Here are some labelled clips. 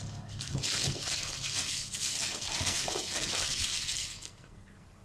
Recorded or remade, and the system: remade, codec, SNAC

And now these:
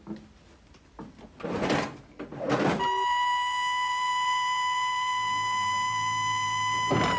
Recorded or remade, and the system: recorded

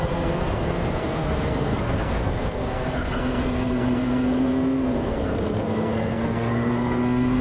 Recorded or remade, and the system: remade, codec, SNAC